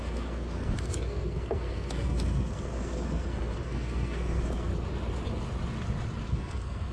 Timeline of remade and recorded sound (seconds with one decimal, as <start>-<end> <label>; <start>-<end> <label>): 0.0-4.7 remade; 4.7-6.3 recorded; 6.3-6.9 remade